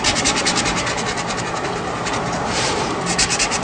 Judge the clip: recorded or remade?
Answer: remade